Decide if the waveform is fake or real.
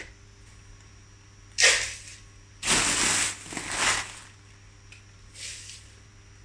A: real